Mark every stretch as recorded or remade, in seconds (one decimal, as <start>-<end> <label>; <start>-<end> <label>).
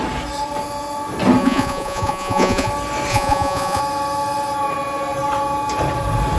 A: 0.0-1.4 recorded; 1.4-2.7 remade; 2.7-3.1 recorded; 3.1-3.8 remade; 3.8-6.4 recorded